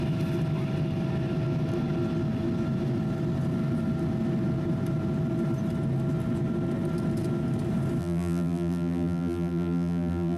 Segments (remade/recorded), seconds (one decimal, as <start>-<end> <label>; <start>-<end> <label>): 0.0-8.0 recorded; 8.0-10.4 remade